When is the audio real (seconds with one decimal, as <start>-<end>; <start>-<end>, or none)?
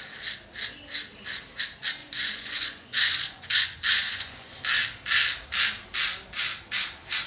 0.0-2.0; 4.5-7.3